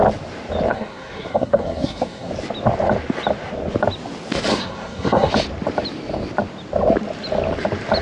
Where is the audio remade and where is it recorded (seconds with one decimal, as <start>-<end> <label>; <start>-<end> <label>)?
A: 0.0-0.7 recorded; 0.7-2.3 remade; 2.3-4.5 recorded; 4.5-5.3 remade; 5.3-8.0 recorded